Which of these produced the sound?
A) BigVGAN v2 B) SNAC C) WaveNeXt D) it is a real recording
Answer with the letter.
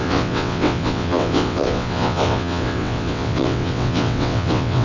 C